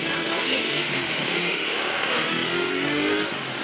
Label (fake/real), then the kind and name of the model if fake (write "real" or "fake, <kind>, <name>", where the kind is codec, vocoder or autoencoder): fake, autoencoder, DAC-VAE